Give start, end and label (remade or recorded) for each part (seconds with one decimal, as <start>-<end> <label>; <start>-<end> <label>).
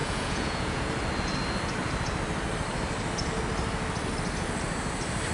0.0-0.8 remade; 0.8-5.3 recorded